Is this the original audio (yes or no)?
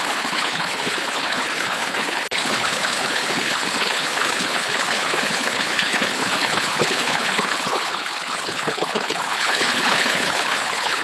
no